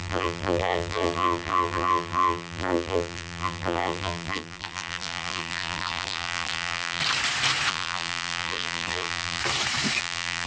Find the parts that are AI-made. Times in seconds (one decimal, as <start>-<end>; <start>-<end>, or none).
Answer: 0.0-7.0; 7.7-9.4; 10.0-10.5